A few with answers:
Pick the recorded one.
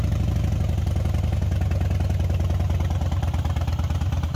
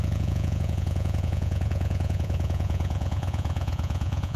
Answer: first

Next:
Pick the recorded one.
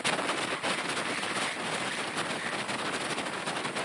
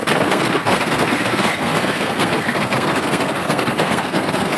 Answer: first